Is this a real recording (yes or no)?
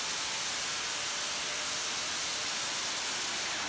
yes